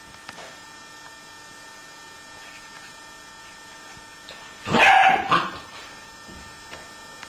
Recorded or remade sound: recorded